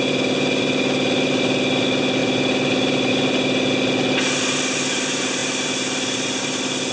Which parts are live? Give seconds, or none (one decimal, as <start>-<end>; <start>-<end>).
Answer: 0.0-6.9